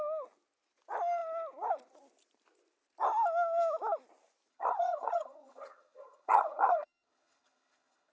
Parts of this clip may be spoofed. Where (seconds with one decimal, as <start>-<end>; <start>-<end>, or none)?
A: 4.5-8.1